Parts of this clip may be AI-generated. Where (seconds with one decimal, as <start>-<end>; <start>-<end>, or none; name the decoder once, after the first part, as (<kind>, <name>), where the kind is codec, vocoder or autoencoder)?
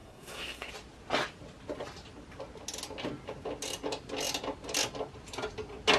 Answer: 0.0-0.7 (codec, SNAC)